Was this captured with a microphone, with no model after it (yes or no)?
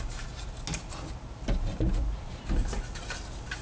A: yes